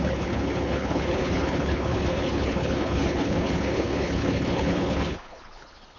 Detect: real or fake fake